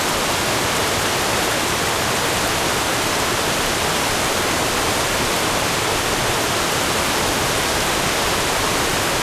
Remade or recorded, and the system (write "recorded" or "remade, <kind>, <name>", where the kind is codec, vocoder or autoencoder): recorded